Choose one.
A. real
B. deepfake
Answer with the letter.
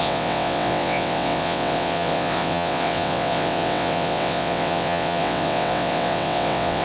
B